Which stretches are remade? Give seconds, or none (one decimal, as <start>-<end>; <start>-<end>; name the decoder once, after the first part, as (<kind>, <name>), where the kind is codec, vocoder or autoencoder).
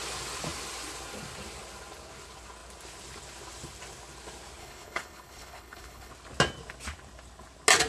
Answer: 4.6-6.1 (codec, HILCodec)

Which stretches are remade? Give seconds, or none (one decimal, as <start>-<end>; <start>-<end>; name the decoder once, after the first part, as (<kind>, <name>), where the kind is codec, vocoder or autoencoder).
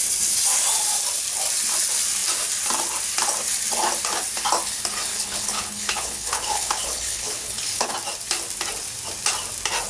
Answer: 5.1-7.9 (codec, HILCodec)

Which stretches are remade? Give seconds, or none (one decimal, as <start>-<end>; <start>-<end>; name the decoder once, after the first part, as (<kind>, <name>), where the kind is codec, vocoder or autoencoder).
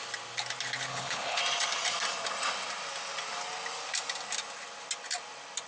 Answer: 0.9-1.4 (codec, HILCodec)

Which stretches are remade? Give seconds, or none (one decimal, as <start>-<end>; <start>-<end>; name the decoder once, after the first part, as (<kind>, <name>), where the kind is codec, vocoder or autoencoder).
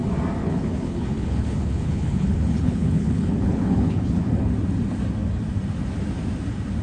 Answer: 0.4-4.5 (codec, HILCodec)